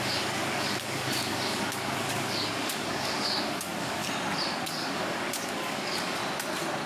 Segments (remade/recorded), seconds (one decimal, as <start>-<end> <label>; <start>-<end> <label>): 0.0-4.0 remade; 4.0-4.6 recorded; 4.6-6.2 remade; 6.2-6.9 recorded